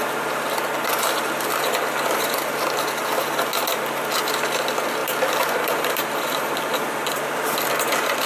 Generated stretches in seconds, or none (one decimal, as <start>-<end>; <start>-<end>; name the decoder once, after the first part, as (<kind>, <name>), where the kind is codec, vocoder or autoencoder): none